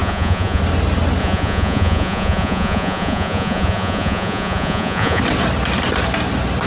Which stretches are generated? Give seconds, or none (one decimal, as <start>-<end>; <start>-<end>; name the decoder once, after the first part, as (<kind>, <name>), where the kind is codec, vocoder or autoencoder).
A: 0.0-0.6 (vocoder, Vocos); 1.2-5.2